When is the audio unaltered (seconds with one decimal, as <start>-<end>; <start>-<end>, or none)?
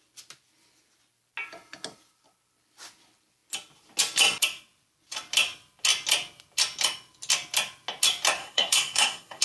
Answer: 0.0-8.4